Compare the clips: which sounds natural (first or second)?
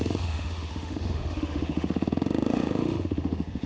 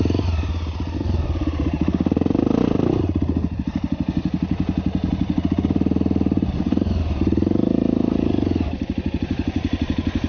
second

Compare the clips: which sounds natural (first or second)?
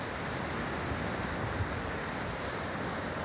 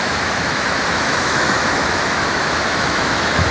first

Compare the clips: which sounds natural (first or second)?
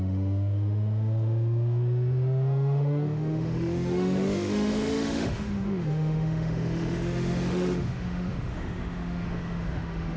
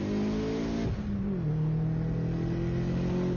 second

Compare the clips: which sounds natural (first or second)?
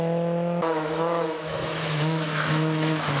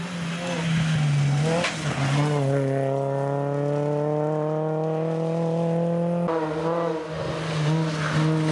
second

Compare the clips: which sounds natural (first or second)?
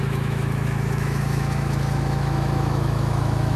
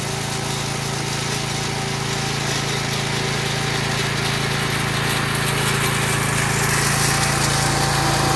second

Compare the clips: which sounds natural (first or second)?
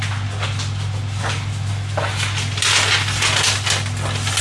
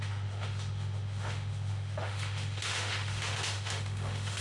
first